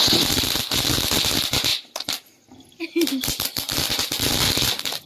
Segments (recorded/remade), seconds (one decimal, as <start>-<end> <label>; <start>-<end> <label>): 0.0-5.1 recorded